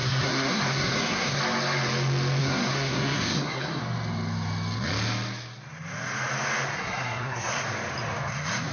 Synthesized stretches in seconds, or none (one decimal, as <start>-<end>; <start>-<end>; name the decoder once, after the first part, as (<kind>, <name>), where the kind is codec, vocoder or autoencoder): 0.0-1.4 (codec, SNAC); 2.4-3.8; 6.7-7.5